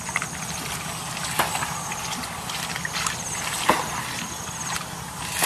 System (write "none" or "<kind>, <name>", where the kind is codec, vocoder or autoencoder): none